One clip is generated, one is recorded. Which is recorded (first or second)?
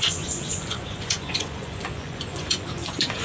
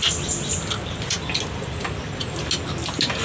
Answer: second